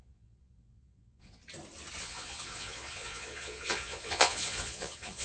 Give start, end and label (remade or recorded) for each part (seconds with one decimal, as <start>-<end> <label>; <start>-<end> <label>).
0.0-1.4 remade; 1.4-2.0 recorded; 2.0-5.2 remade